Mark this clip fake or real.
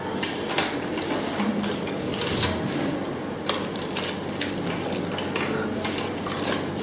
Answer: real